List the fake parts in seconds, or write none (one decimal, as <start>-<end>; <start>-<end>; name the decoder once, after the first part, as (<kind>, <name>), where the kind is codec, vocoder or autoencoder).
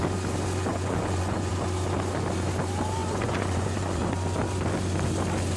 0.7-1.5 (vocoder, Vocos); 3.0-4.0